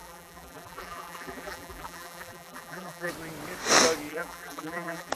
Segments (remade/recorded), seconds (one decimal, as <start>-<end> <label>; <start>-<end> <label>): 0.0-3.1 remade; 3.1-4.1 recorded; 4.1-5.1 remade